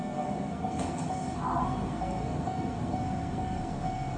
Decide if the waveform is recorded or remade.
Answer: remade